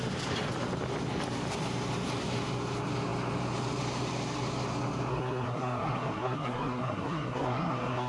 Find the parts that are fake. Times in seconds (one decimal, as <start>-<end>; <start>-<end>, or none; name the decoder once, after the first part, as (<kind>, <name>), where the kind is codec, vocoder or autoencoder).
5.1-8.1 (codec, SNAC)